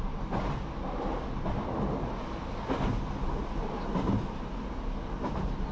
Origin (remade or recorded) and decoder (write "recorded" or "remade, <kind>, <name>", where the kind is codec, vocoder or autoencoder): recorded